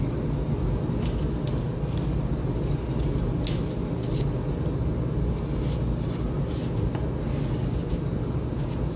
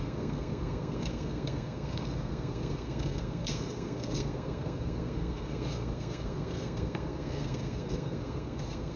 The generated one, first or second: second